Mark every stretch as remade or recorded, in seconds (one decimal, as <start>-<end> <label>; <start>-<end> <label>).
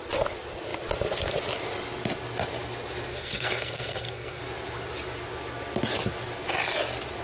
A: 0.0-3.1 recorded; 3.1-4.4 remade; 4.4-7.2 recorded